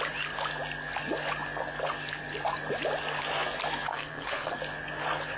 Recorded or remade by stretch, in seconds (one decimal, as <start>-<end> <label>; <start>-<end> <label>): 0.0-3.9 recorded; 3.9-4.6 remade; 4.6-5.4 recorded